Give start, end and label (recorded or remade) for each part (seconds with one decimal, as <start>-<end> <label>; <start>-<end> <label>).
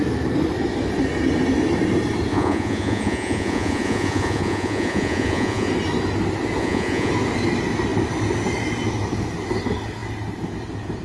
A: 0.0-2.3 recorded; 2.3-5.7 remade; 5.7-6.6 recorded; 6.6-7.1 remade; 7.1-11.0 recorded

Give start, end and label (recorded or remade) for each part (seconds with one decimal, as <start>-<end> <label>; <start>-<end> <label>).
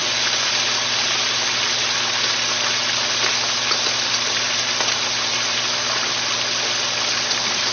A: 0.0-0.5 remade; 0.5-7.7 recorded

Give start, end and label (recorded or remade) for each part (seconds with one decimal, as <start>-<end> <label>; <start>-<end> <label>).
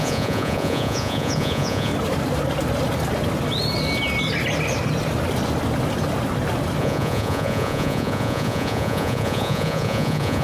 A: 0.0-1.9 remade; 1.9-6.8 recorded; 6.8-10.4 remade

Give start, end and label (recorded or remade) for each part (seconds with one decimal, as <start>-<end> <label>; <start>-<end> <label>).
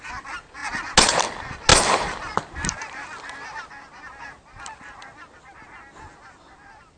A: 0.0-7.0 recorded